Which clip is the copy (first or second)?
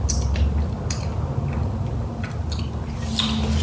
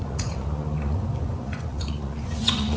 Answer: second